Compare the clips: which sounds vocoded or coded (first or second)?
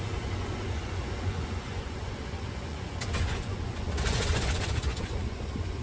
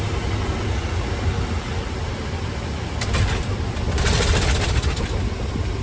first